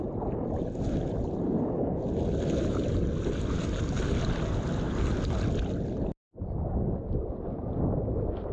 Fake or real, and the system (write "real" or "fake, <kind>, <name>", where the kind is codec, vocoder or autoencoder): real